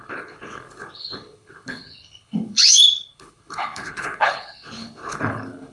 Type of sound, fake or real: fake